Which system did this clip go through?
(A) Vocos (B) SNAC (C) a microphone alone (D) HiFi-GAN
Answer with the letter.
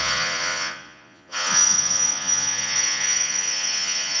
A